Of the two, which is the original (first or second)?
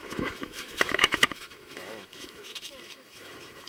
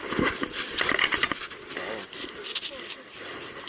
second